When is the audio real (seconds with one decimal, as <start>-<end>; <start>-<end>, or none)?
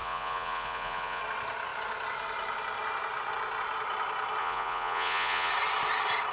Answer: 1.2-4.4; 5.5-6.3